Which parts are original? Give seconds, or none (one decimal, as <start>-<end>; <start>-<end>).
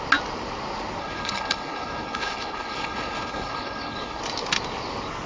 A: 0.0-1.0; 4.2-5.3